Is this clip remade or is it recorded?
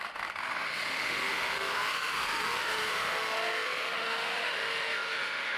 remade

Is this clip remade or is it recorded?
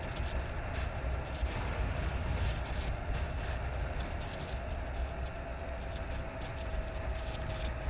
recorded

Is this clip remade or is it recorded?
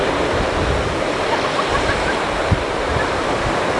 remade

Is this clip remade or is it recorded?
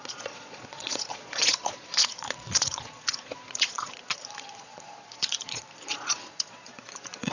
remade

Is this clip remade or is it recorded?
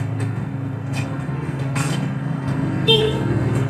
remade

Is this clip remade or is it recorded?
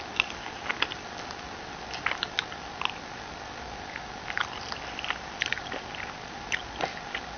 recorded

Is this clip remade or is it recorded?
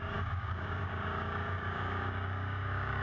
remade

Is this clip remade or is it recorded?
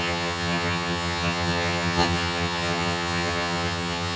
remade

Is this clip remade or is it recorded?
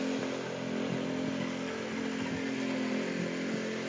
recorded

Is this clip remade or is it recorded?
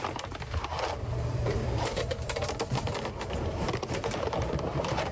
remade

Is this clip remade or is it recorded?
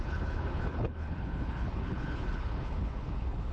remade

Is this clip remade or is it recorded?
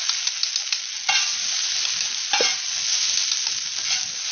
recorded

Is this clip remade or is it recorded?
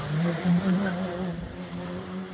remade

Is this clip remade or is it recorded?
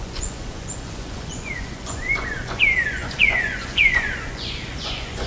remade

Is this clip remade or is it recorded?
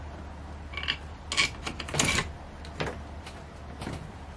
recorded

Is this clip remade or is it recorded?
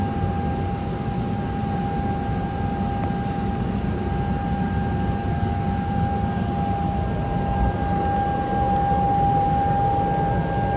recorded